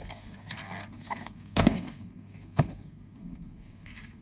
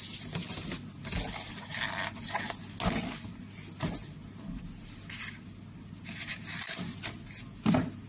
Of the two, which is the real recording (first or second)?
second